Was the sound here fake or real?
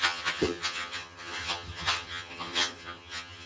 fake